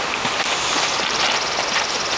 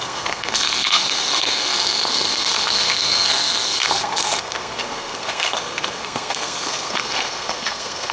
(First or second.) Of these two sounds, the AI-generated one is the second